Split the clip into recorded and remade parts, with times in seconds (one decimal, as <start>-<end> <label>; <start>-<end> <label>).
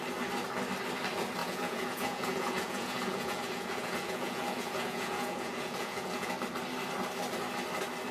0.0-1.4 recorded; 1.4-6.3 remade; 6.3-8.1 recorded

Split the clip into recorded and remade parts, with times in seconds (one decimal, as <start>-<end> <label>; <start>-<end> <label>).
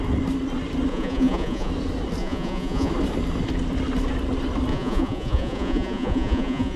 0.0-0.9 recorded; 0.9-1.7 remade; 1.7-2.2 recorded; 2.2-2.9 remade; 2.9-4.7 recorded; 4.7-6.8 remade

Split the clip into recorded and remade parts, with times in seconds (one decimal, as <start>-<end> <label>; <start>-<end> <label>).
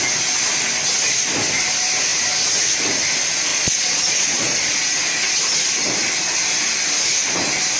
0.0-3.5 recorded; 3.5-4.7 remade; 4.7-7.8 recorded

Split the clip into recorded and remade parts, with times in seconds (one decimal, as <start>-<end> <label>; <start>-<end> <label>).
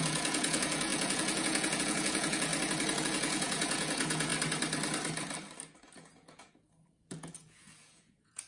0.0-2.5 remade; 2.5-3.0 recorded; 3.0-4.3 remade; 4.3-5.8 recorded; 5.8-8.5 remade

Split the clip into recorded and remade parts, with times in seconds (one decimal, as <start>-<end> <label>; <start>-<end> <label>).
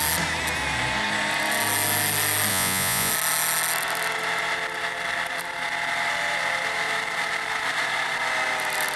0.0-2.5 recorded; 2.5-3.1 remade; 3.1-9.0 recorded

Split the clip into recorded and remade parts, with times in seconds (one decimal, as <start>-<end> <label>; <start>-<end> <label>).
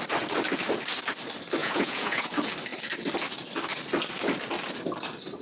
0.0-1.6 recorded; 1.6-2.3 remade; 2.3-5.4 recorded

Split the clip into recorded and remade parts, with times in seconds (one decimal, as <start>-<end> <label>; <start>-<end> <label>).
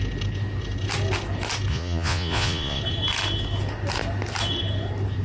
0.0-1.7 recorded; 1.7-2.8 remade; 2.8-5.2 recorded